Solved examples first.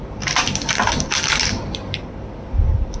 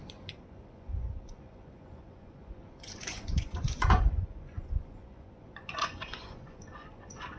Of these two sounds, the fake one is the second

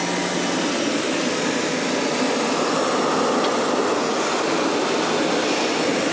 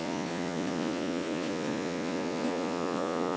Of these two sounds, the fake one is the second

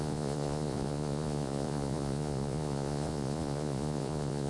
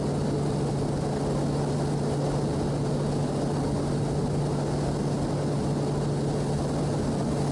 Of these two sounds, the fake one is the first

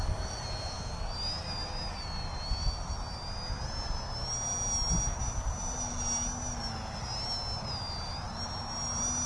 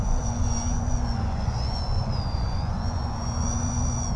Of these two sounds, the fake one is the second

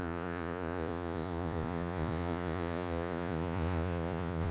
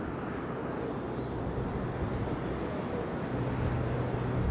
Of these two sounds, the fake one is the first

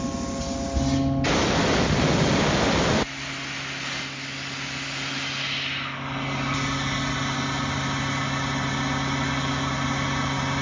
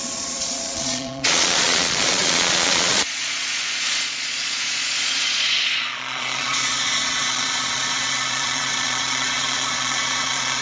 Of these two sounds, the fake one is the second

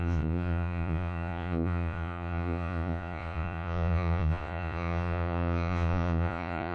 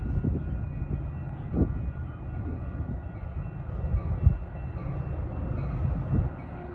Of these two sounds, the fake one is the first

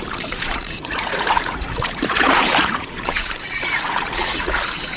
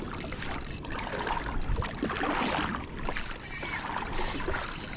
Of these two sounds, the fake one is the first